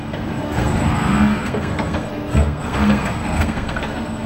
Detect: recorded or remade remade